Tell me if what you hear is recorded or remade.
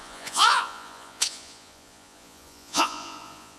remade